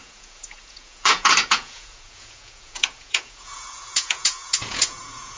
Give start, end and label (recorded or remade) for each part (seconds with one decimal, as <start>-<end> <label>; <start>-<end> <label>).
0.0-5.4 remade